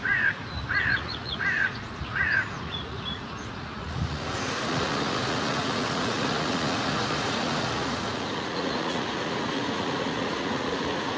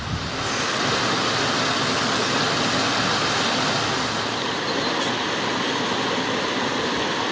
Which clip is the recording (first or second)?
second